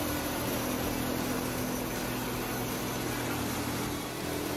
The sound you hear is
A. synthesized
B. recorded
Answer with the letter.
B